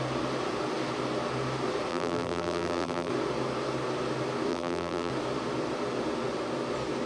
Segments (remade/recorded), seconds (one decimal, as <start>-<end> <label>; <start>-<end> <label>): 0.0-1.9 recorded; 1.9-3.1 remade; 3.1-4.5 recorded; 4.5-5.1 remade; 5.1-7.1 recorded